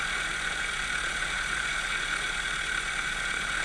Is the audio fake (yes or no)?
yes